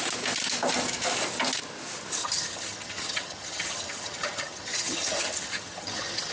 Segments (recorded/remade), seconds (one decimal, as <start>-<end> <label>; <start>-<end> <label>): 0.0-2.2 recorded; 2.2-6.3 remade